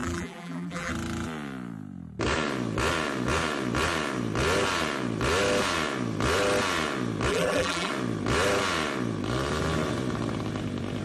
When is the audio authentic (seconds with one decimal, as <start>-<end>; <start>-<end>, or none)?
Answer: 0.9-7.3; 7.9-11.0